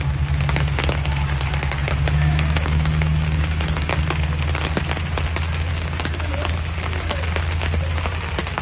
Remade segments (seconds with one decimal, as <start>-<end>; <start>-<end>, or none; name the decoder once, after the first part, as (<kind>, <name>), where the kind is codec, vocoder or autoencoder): 1.8-3.9 (codec, DAC); 5.7-6.3